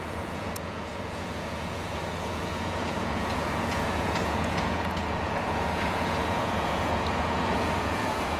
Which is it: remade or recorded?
remade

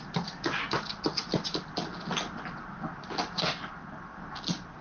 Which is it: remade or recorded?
recorded